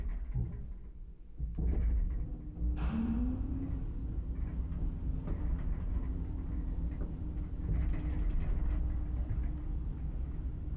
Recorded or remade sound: recorded